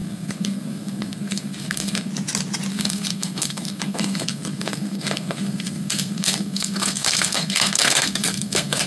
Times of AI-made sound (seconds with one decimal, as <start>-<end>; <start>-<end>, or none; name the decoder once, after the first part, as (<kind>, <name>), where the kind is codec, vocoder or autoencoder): 0.0-2.1 (codec, SNAC); 2.7-8.9